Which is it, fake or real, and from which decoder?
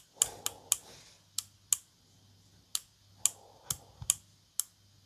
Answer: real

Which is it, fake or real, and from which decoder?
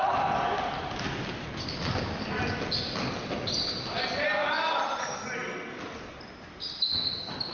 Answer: real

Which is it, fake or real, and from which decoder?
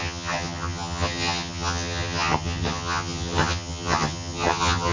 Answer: fake, vocoder, HiFi-GAN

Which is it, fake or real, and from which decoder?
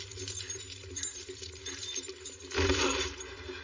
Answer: fake, vocoder, BigVGAN v2